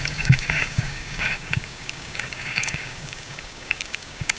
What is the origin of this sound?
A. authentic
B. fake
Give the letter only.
B